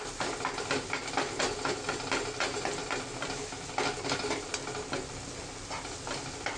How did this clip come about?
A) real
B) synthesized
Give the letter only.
A